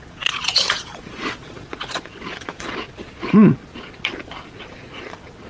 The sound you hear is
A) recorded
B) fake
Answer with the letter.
B